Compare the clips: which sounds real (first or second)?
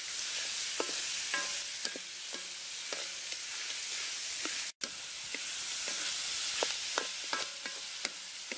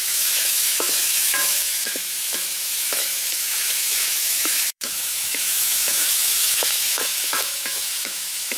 first